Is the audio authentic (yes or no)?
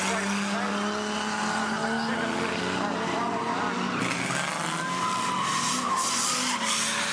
yes